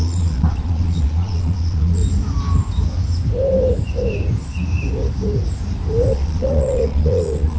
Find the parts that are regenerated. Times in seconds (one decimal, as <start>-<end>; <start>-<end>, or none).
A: 0.0-2.0; 6.1-7.6